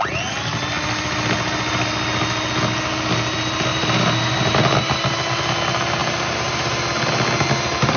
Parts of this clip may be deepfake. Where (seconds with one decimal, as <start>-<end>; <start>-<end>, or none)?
3.7-4.6; 6.0-6.9